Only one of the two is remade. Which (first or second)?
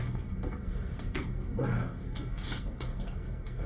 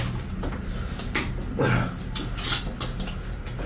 first